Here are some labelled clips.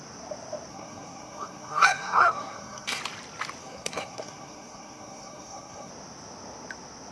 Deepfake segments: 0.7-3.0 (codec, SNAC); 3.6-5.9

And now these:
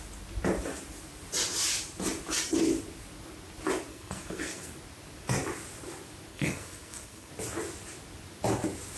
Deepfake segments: 3.9-4.7 (codec, SNAC); 6.3-7.3

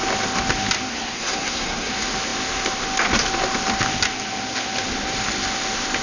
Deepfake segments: 0.9-1.9 (codec, SNAC)

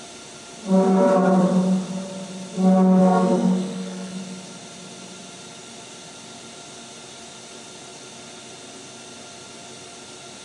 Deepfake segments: 3.0-4.2 (codec, SNAC)

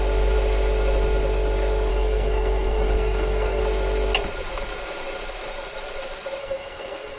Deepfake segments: 1.9-3.6 (codec, SNAC); 6.4-7.2

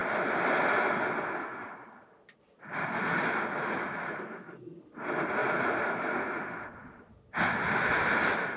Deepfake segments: none